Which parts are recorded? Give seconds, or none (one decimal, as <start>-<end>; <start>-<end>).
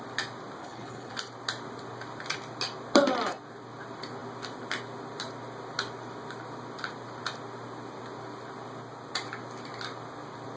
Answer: 0.0-0.6; 1.1-10.6